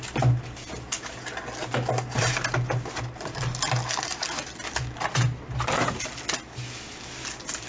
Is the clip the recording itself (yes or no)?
yes